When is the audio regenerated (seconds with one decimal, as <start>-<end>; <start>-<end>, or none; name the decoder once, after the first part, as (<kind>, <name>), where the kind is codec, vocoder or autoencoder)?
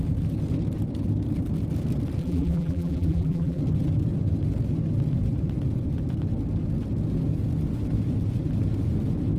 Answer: 2.2-3.6 (vocoder, BigVGAN v2)